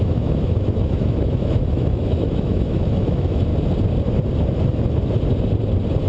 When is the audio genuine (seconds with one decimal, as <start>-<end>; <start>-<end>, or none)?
3.5-6.1